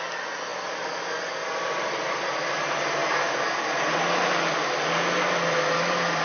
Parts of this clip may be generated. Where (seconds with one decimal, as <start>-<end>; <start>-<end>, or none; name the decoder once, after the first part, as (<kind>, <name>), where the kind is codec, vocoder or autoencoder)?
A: none

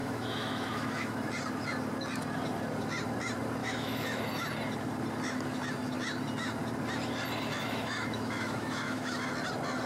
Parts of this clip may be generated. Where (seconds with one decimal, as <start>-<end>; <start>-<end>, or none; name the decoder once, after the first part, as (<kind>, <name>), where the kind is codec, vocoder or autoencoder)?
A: 0.0-1.3 (autoencoder, DAC-VAE); 3.6-4.2; 7.6-9.3

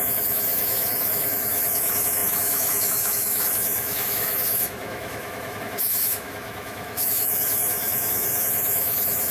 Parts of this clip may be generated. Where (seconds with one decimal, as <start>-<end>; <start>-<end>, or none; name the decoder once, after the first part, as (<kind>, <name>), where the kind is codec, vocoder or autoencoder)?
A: 0.0-9.3 (autoencoder, DAC-VAE)